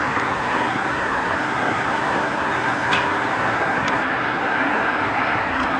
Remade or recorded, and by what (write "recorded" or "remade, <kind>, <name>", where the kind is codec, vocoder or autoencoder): remade, codec, SNAC